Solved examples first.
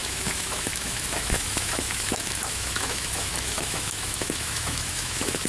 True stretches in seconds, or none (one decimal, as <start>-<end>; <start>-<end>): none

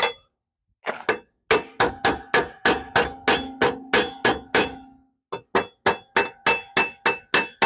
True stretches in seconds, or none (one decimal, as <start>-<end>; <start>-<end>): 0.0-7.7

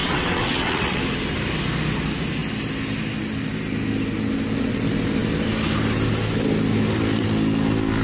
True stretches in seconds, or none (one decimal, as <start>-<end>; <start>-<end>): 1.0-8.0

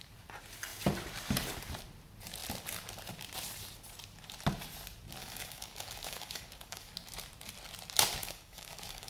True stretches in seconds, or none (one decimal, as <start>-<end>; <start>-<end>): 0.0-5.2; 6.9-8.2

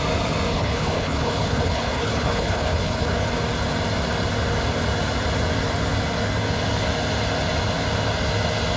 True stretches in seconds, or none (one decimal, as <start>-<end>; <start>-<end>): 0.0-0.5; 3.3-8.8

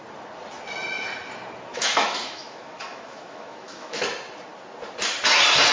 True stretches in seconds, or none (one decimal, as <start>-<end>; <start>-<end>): 0.0-1.7; 4.0-5.7

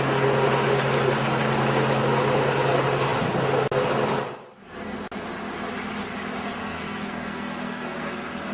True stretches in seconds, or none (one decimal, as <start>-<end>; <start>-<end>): 0.0-6.6; 8.1-8.5

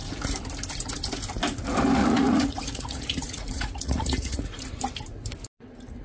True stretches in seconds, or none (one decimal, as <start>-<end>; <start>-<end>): 0.0-2.0; 4.8-6.0